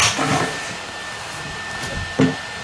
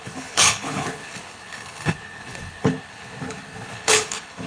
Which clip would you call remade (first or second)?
second